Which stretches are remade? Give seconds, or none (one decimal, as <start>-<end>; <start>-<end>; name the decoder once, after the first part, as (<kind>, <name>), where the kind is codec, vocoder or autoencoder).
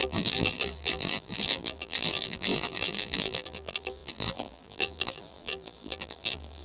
0.0-6.6 (vocoder, BigVGAN v2)